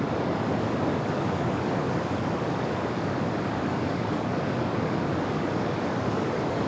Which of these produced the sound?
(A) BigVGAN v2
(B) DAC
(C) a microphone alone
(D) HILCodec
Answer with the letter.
B